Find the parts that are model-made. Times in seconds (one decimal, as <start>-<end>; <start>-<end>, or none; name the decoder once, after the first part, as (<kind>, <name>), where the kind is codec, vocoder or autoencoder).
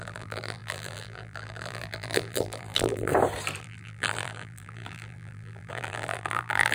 0.0-3.1 (vocoder, BigVGAN v2); 3.6-6.7